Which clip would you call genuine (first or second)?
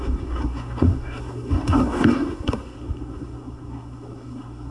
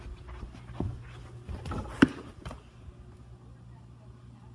second